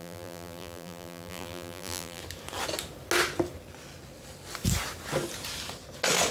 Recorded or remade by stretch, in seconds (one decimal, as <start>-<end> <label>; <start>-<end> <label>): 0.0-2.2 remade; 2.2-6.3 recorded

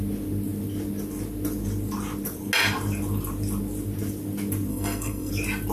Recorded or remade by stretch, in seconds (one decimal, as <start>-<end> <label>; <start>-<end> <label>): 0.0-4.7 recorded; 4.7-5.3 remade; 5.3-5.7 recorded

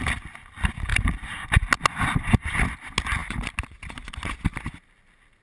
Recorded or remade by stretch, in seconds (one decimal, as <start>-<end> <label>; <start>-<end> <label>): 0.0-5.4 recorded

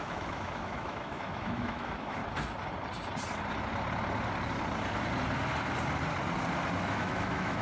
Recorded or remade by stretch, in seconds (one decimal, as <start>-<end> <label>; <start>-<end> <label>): 0.0-2.2 remade; 2.2-6.8 recorded; 6.8-7.6 remade

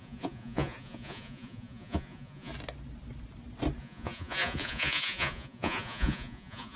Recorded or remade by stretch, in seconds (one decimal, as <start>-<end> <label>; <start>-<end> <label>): 0.0-2.5 remade; 2.5-3.8 recorded; 3.8-6.8 remade

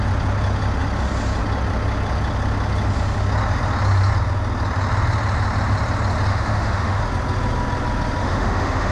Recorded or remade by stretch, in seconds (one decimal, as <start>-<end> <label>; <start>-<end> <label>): 0.0-6.3 recorded; 6.3-7.0 remade; 7.0-8.2 recorded; 8.2-8.9 remade

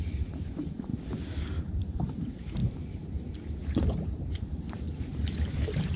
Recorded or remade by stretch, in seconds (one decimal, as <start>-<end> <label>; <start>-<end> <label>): 0.0-0.9 remade; 0.9-1.6 recorded; 1.6-6.0 remade

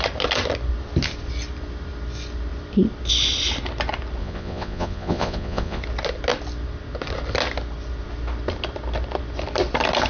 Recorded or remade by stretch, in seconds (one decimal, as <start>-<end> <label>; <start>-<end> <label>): 0.0-4.2 recorded; 4.2-5.8 remade; 5.8-10.1 recorded